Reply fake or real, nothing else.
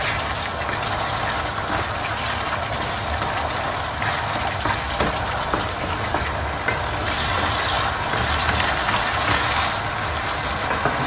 real